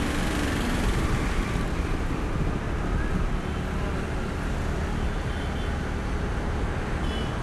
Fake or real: real